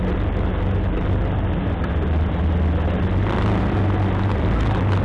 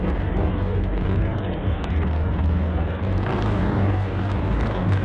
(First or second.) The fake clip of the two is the second